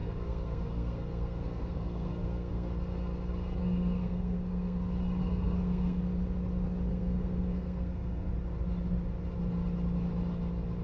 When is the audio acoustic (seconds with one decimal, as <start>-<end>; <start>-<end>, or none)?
2.7-3.6; 4.8-5.2; 6.0-6.9; 8.3-10.8